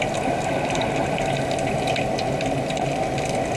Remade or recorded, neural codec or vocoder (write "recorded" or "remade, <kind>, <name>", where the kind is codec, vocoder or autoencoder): recorded